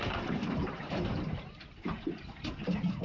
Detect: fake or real fake